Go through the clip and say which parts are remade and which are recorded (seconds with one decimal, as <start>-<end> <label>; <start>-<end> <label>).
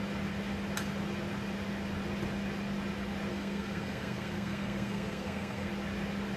0.0-3.3 recorded; 3.3-5.7 remade; 5.7-6.4 recorded